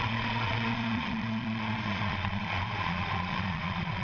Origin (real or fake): fake